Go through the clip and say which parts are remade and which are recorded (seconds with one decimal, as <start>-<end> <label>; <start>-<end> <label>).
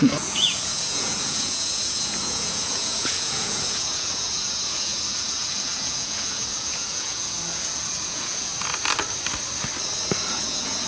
0.0-8.5 remade; 8.5-10.4 recorded; 10.4-10.9 remade